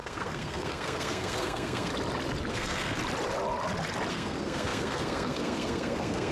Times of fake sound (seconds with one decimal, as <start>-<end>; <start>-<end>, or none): 0.0-1.9; 2.5-3.0; 4.1-6.3